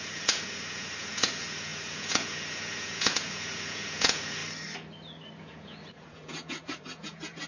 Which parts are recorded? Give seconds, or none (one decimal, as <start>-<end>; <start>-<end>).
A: 4.4-5.4